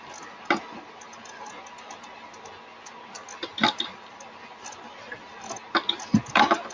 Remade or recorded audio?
recorded